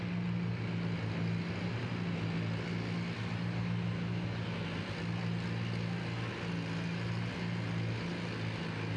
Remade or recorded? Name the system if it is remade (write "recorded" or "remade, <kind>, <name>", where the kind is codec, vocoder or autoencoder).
recorded